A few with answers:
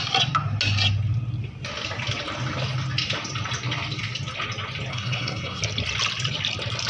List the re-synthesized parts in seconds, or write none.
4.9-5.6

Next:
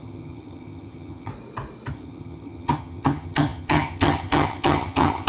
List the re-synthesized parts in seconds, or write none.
0.0-1.3; 1.9-5.3